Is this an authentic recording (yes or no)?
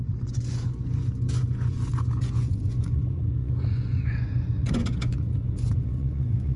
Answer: no